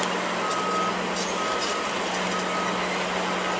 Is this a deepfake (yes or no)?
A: no